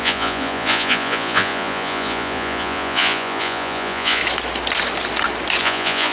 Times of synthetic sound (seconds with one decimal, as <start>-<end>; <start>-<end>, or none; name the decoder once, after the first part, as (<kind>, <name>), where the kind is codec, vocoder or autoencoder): 0.0-4.2 (vocoder, Vocos); 5.6-6.1